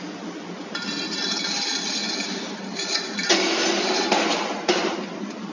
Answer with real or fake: real